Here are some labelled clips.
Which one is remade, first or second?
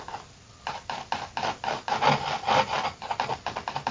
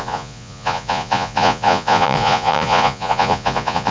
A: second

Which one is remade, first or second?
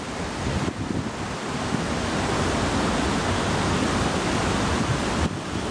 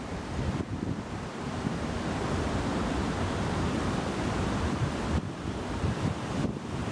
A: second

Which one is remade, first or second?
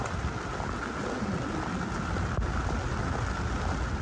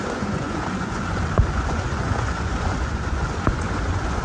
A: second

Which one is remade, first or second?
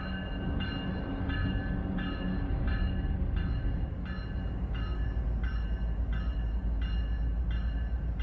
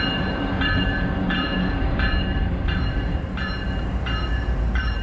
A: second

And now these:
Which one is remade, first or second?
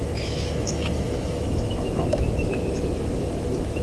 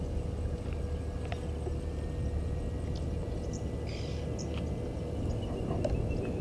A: first